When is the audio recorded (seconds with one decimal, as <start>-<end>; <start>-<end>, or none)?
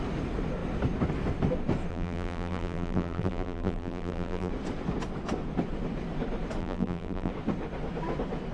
0.0-1.9; 4.5-6.6; 7.3-8.5